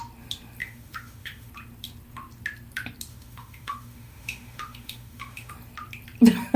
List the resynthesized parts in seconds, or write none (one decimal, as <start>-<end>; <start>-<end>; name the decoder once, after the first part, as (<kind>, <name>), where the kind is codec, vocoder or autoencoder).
0.6-1.5 (autoencoder, DAC-VAE); 3.1-5.5